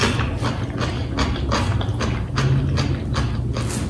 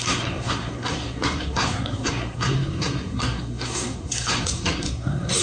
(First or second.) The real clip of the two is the first